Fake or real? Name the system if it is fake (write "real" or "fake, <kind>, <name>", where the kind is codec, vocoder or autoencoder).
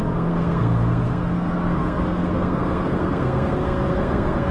fake, codec, SNAC